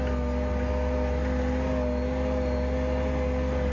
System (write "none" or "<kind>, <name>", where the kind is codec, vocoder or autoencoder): none